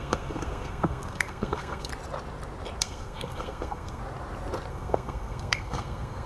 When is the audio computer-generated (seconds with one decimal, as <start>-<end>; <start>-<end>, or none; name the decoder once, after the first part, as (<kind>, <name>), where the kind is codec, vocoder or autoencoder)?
0.0-1.9 (codec, SNAC); 2.8-4.0; 4.7-6.3